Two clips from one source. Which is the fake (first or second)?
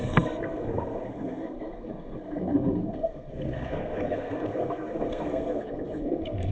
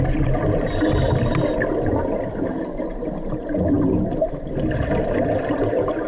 first